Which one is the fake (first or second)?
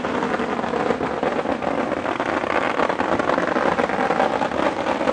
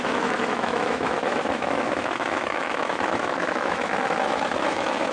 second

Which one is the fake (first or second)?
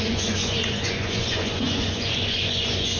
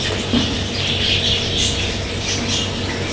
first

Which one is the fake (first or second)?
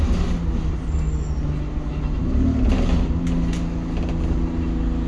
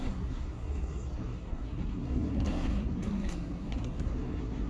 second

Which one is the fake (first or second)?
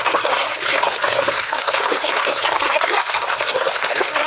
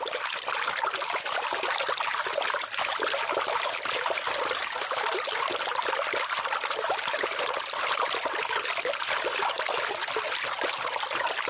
first